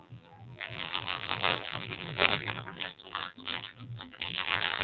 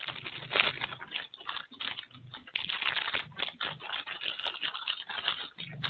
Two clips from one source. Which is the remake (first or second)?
first